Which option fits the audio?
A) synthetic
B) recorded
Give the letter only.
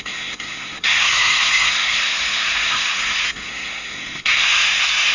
A